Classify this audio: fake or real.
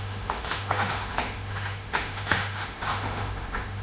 fake